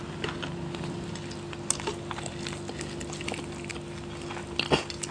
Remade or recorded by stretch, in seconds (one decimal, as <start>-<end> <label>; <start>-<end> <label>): 0.0-5.1 recorded